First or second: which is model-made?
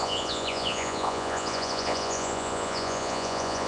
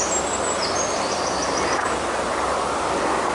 first